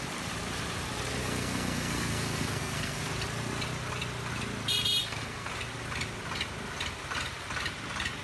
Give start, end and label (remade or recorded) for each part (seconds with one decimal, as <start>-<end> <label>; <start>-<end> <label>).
0.0-1.2 recorded; 1.2-3.0 remade; 3.0-5.0 recorded; 5.0-5.5 remade; 5.5-8.2 recorded